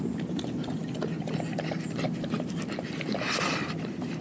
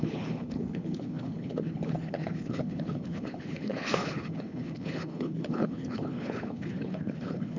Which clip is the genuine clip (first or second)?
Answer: first